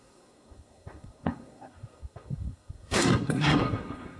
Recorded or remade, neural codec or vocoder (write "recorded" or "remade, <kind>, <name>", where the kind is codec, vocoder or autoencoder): remade, codec, SNAC